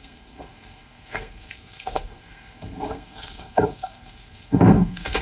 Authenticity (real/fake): fake